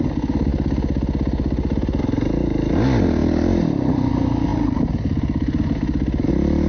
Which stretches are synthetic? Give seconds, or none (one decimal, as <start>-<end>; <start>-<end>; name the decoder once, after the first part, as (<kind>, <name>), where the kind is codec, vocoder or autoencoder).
none